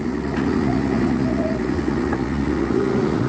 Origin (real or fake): fake